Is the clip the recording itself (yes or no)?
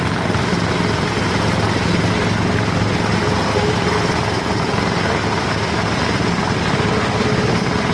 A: yes